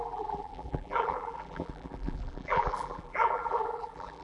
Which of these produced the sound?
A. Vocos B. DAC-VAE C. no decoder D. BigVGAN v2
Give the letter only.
D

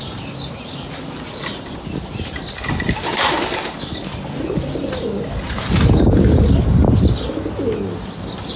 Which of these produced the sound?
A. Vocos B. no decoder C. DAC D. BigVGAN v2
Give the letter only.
B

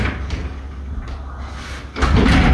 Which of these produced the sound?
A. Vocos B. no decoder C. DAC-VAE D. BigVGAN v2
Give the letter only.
B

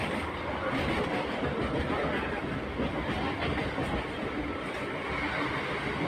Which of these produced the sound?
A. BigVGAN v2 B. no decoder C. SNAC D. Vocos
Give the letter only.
B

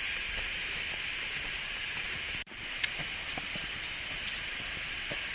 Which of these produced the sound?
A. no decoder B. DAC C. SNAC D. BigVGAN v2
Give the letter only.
A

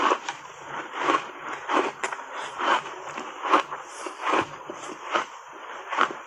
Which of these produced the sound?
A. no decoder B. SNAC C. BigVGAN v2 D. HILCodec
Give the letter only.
C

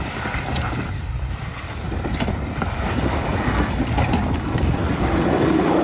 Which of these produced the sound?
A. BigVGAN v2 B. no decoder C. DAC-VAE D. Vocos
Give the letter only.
A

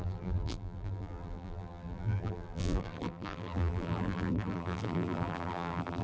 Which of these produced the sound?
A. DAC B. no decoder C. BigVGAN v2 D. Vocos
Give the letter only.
C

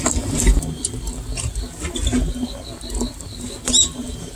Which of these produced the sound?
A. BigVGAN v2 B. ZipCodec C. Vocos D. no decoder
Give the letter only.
A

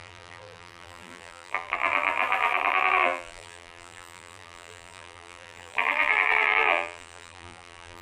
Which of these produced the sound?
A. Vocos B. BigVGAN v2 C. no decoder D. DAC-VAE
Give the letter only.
B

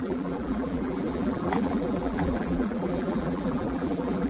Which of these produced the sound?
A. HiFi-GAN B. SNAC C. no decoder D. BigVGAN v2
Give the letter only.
D